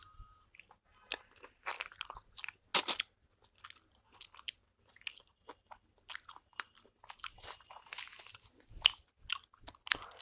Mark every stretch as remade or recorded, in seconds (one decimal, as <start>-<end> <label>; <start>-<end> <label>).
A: 0.0-10.2 recorded